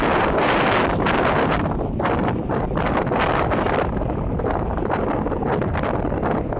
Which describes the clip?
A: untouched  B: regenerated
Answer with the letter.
A